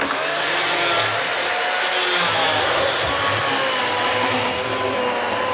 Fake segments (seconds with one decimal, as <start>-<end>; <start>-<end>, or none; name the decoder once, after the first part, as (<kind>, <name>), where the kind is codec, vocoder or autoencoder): 2.6-3.1 (codec, SNAC)